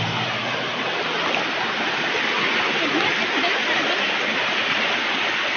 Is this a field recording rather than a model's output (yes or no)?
yes